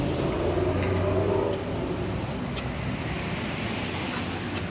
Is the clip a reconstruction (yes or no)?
no